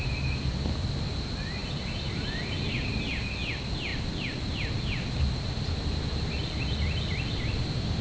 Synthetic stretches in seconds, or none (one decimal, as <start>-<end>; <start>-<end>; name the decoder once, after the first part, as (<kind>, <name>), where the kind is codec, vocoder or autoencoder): none